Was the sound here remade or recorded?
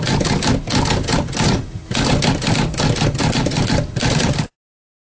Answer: recorded